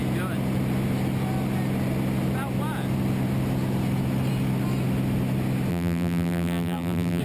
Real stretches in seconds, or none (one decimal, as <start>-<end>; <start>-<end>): 0.0-5.7